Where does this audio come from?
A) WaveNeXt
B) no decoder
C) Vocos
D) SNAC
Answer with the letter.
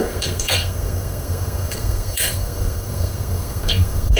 D